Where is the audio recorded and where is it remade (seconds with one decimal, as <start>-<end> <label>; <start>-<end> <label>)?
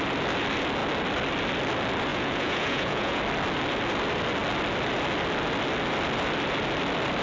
0.0-2.1 recorded; 2.1-3.2 remade; 3.2-7.2 recorded